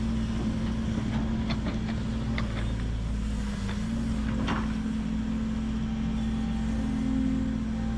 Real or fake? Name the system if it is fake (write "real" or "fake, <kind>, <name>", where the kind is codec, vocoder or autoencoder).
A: real